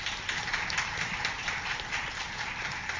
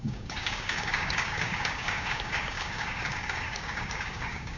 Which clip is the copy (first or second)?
second